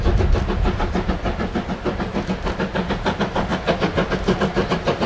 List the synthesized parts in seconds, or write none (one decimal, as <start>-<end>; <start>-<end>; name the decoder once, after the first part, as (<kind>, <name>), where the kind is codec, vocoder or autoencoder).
none